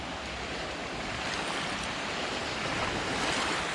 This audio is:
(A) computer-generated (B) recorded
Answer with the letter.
B